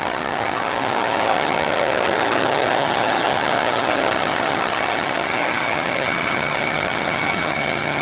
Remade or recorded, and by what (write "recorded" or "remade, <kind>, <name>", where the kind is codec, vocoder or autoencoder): remade, vocoder, HiFi-GAN